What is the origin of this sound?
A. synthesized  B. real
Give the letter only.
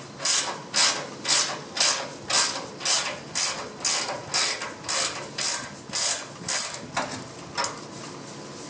B